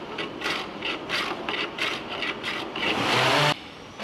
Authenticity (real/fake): fake